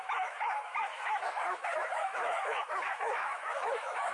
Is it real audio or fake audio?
fake